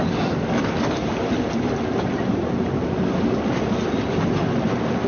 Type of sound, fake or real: real